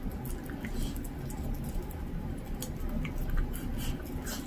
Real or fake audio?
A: real